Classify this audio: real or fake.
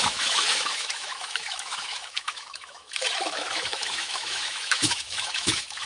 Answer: fake